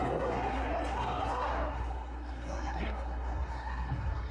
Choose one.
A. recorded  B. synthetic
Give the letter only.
B